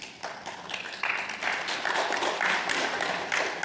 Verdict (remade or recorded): recorded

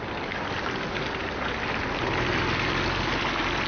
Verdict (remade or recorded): recorded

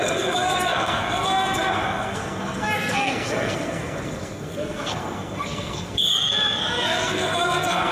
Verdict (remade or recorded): remade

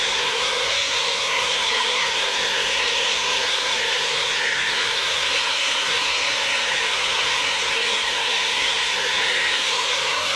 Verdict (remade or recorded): remade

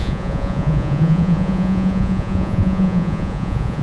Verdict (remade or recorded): remade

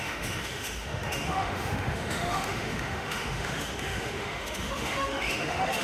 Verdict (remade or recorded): remade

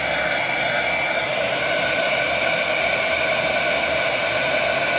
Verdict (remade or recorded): recorded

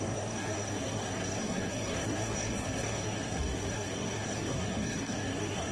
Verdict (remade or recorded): remade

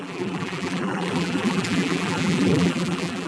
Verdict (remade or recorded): remade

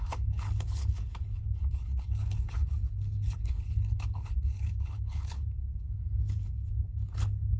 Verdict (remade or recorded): remade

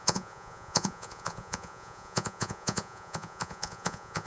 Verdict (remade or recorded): remade